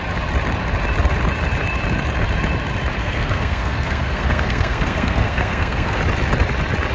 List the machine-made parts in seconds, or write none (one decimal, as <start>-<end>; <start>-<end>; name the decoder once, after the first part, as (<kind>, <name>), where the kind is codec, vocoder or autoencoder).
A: 3.0-6.0 (codec, SNAC)